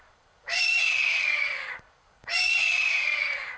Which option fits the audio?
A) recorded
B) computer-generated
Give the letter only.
B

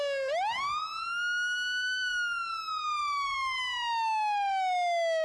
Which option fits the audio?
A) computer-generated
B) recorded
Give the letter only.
B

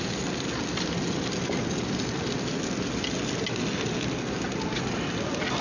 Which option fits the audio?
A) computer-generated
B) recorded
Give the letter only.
B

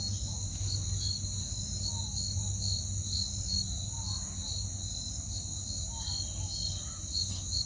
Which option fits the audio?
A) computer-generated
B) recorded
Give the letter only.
B